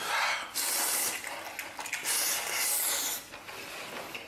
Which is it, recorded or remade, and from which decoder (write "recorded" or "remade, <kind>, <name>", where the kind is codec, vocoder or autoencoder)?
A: recorded